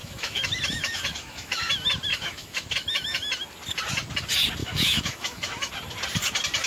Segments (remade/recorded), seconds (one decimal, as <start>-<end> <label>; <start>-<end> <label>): 0.0-1.7 remade; 1.7-2.1 recorded; 2.1-3.3 remade; 3.3-4.6 recorded; 4.6-5.7 remade; 5.7-6.7 recorded